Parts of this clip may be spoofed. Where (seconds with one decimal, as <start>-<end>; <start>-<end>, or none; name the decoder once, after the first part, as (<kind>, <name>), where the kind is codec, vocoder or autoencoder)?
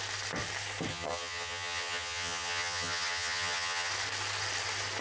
0.9-3.9 (vocoder, HiFi-GAN)